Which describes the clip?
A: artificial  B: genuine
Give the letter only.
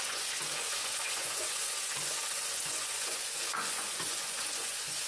A